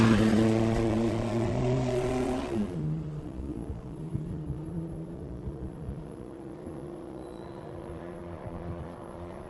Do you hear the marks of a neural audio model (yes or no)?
yes